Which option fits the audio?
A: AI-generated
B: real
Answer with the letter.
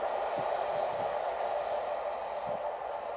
B